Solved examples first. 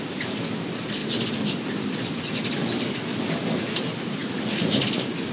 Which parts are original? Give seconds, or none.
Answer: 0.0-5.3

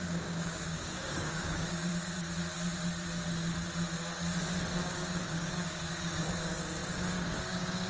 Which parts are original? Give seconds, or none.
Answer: 1.9-4.8

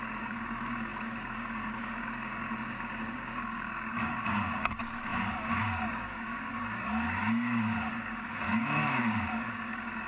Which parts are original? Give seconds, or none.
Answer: none

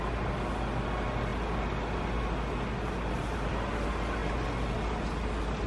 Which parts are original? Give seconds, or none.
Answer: 0.0-5.7

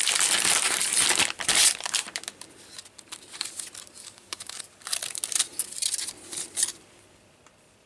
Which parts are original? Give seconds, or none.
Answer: 0.0-4.0; 4.6-7.9

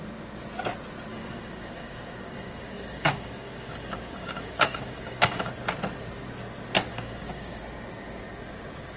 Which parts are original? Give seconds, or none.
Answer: 0.0-1.1; 5.5-6.9; 7.6-9.0

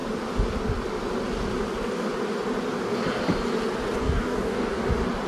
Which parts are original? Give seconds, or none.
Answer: 0.0-4.0; 4.8-5.3

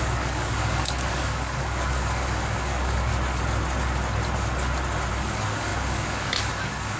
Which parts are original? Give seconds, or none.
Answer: 3.1-5.1